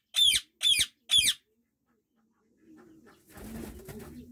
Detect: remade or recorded recorded